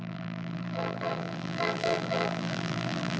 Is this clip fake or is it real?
fake